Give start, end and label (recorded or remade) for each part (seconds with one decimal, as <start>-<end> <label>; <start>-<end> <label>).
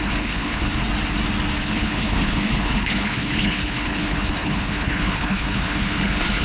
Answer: 0.0-0.8 remade; 0.8-1.6 recorded; 1.6-6.4 remade